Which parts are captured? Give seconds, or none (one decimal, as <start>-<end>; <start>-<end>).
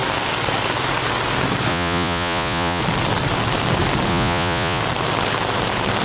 0.0-1.7; 2.8-4.1; 4.8-6.0